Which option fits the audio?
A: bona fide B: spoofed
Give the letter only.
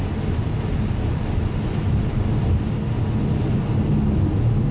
A